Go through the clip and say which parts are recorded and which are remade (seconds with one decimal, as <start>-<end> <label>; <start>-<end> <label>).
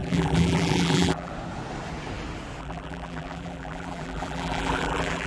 0.0-1.3 remade; 1.3-2.6 recorded; 2.6-5.3 remade